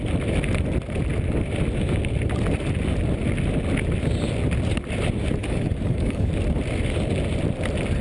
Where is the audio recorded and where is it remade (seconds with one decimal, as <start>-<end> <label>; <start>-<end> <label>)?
0.0-5.4 recorded; 5.4-6.3 remade; 6.3-8.0 recorded